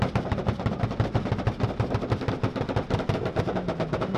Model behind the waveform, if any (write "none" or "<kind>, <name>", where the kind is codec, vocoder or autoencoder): none